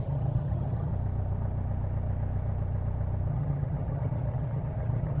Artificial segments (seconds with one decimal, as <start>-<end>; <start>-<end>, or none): 0.0-0.9; 3.3-5.2